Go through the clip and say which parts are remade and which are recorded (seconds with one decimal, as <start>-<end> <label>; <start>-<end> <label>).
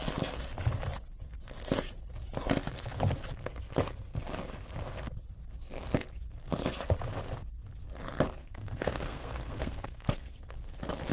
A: 0.0-8.4 recorded; 8.4-10.4 remade; 10.4-11.1 recorded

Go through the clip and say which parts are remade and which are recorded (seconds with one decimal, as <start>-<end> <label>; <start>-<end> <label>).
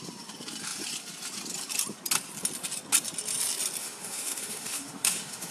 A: 0.0-3.8 recorded; 3.8-5.5 remade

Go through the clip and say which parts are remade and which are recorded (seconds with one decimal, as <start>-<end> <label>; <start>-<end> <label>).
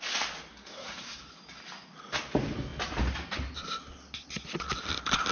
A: 0.0-0.5 recorded; 0.5-1.2 remade; 1.2-5.3 recorded